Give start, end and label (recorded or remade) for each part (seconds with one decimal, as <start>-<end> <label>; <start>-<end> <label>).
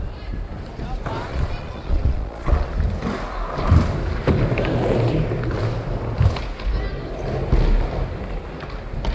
0.0-1.3 recorded; 1.3-2.7 remade; 2.7-9.1 recorded